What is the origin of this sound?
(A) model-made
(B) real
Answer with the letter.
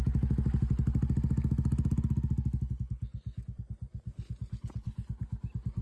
B